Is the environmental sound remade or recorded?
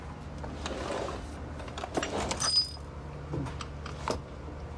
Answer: recorded